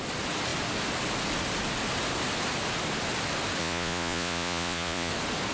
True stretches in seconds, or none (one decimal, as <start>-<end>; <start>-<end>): 0.0-3.6; 5.1-5.5